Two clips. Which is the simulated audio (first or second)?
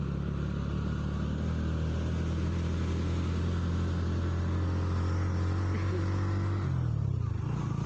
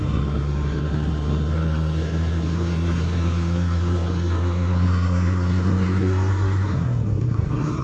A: second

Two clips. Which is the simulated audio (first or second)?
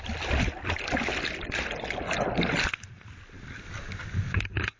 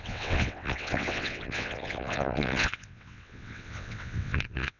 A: second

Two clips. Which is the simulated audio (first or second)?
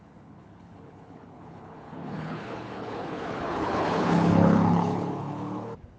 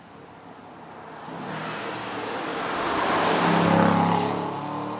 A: first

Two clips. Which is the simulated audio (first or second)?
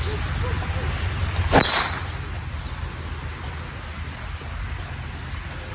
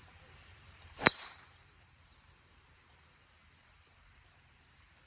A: second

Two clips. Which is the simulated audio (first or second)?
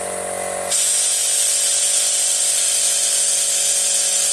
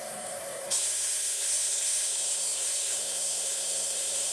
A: second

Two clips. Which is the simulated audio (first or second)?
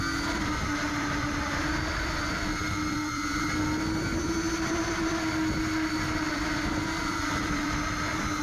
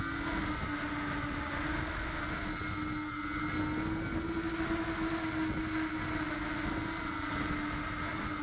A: first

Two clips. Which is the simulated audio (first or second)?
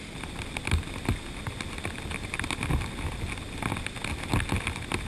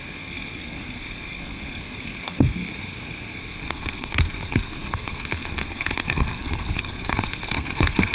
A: second